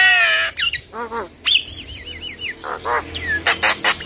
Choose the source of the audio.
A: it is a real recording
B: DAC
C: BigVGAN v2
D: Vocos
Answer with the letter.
A